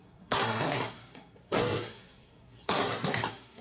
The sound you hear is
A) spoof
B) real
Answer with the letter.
A